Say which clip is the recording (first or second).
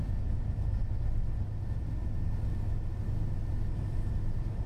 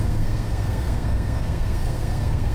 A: first